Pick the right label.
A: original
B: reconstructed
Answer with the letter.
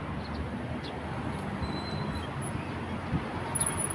A